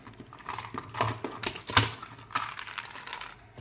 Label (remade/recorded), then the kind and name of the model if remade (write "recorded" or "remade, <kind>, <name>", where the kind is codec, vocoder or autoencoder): recorded